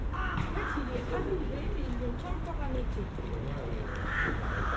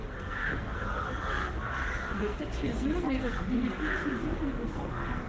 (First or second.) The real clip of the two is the first